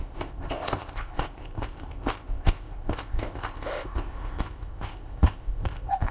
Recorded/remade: remade